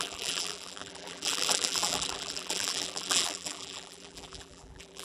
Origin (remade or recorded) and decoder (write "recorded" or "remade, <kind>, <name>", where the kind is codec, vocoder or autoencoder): remade, vocoder, BigVGAN v2